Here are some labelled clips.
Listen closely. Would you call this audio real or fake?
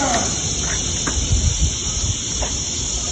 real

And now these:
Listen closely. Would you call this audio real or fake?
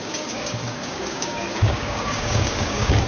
fake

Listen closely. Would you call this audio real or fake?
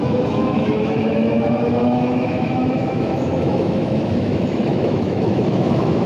fake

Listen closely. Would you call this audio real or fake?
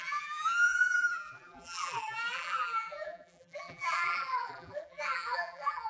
fake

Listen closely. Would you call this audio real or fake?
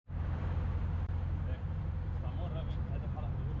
fake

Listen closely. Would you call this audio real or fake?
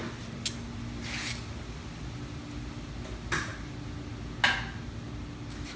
real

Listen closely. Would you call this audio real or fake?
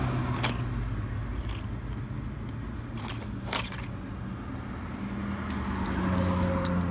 real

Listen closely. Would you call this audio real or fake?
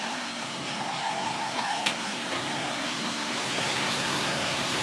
fake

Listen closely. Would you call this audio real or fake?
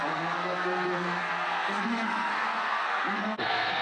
fake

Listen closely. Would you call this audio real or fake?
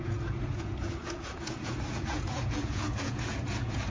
fake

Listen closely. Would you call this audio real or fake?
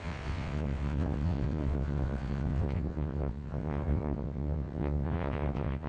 fake